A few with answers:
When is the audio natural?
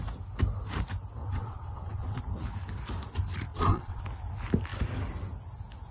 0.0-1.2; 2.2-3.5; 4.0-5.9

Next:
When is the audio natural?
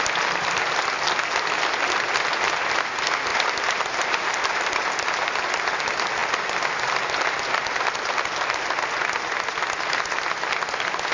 0.0-3.3; 5.3-11.1